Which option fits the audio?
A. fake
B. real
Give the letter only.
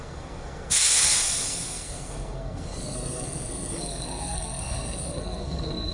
A